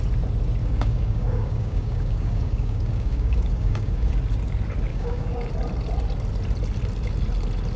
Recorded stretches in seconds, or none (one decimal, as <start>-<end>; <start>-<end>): 0.0-0.6; 4.1-4.9; 5.5-7.8